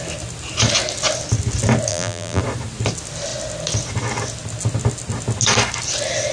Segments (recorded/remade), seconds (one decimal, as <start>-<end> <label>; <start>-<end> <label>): 0.0-1.9 recorded; 1.9-2.4 remade; 2.4-6.3 recorded